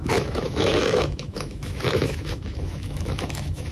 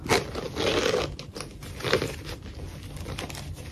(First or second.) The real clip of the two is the second